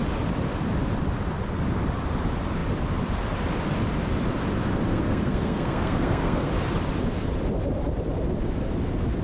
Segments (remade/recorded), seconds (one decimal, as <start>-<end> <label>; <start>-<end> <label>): 0.0-4.9 recorded; 4.9-6.5 remade; 6.5-9.2 recorded